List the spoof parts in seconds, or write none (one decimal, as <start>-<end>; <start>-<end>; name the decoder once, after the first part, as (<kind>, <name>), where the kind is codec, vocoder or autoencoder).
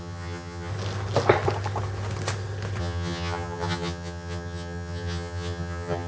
0.0-0.7 (vocoder, HiFi-GAN); 2.8-6.1